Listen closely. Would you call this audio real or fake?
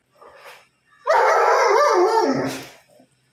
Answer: real